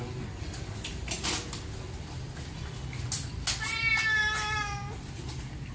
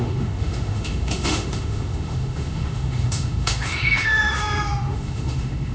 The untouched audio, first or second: first